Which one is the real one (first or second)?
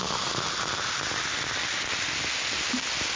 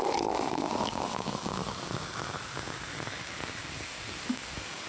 first